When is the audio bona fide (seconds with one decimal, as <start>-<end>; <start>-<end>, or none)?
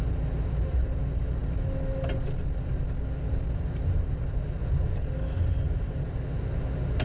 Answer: 0.0-4.6; 5.1-7.0